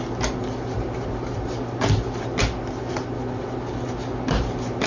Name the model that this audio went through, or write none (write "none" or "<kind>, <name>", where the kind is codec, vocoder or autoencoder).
none